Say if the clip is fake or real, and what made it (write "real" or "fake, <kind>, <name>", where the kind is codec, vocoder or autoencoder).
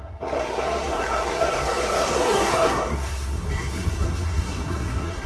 fake, codec, SNAC